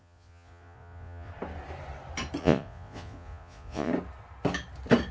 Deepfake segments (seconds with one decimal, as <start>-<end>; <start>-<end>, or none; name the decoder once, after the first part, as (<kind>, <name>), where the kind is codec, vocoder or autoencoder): 0.0-1.3 (vocoder, Vocos); 2.4-3.9